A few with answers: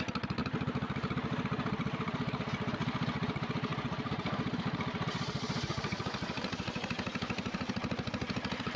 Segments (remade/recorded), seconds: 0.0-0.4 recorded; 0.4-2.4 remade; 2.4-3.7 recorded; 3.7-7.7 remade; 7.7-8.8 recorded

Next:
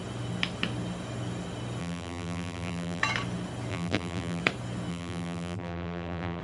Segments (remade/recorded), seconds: 0.0-1.8 recorded; 1.8-3.0 remade; 3.0-3.7 recorded; 3.7-4.4 remade; 4.4-4.9 recorded; 4.9-6.4 remade

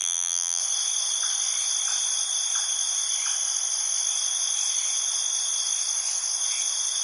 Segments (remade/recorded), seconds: 0.0-0.6 remade; 0.6-7.0 recorded

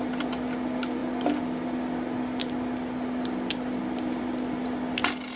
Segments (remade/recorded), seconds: 0.0-1.0 recorded; 1.0-4.2 remade; 4.2-5.4 recorded

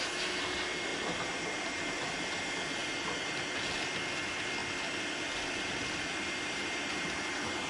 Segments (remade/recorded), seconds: 0.0-0.9 recorded; 0.9-2.4 remade; 2.4-4.6 recorded; 4.6-7.3 remade; 7.3-7.7 recorded

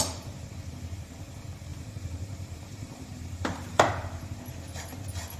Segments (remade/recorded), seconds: 0.0-1.7 recorded; 1.7-3.9 remade; 3.9-5.4 recorded

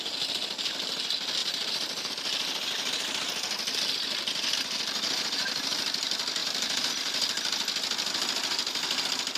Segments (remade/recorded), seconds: 0.0-1.4 recorded; 1.4-2.1 remade; 2.1-6.4 recorded; 6.4-6.9 remade; 6.9-9.4 recorded

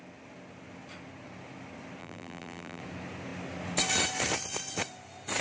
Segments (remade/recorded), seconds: 0.0-2.0 recorded; 2.0-2.8 remade; 2.8-5.4 recorded